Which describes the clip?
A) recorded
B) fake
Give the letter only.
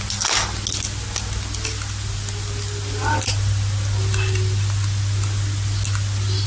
A